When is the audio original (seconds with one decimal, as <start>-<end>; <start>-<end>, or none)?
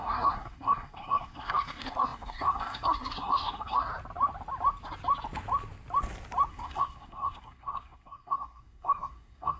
3.9-6.5